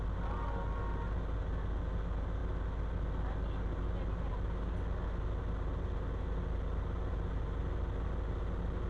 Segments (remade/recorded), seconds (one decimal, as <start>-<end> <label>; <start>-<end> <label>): 0.0-8.9 recorded